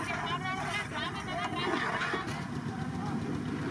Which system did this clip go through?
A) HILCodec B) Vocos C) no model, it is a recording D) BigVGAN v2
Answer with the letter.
C